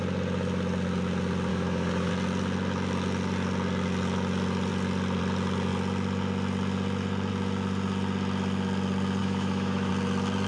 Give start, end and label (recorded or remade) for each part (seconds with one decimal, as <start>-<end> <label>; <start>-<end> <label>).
0.0-1.5 recorded; 1.5-2.1 remade; 2.1-9.2 recorded; 9.2-9.9 remade; 9.9-10.5 recorded